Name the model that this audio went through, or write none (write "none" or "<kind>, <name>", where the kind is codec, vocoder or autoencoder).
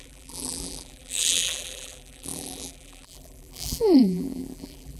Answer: vocoder, BigVGAN v2